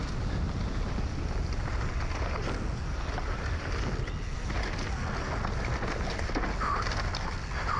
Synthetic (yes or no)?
no